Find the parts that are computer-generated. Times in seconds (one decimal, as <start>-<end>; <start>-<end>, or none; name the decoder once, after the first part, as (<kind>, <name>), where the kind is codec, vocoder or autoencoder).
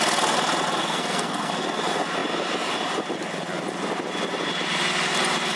0.8-1.5 (codec, SNAC)